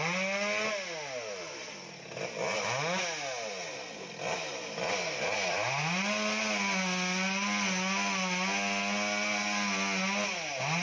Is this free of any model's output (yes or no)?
yes